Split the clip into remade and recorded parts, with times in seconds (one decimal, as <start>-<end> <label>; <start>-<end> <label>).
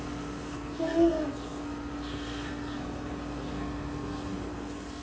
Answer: 0.0-5.0 remade